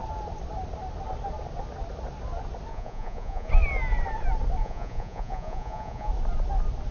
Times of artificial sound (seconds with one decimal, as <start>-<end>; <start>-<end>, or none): 2.7-3.5; 4.6-6.1

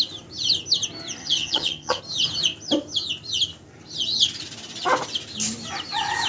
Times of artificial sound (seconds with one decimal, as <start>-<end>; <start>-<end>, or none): 1.2-2.0